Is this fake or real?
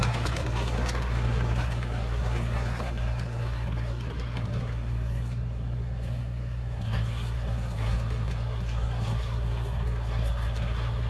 fake